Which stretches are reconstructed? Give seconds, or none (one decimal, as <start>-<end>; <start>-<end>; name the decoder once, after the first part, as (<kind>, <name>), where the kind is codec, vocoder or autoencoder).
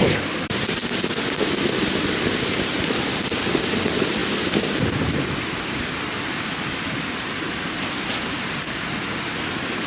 0.0-0.8 (vocoder, BigVGAN v2); 1.4-9.9